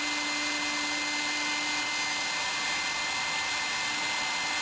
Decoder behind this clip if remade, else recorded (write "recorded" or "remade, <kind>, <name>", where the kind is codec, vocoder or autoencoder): recorded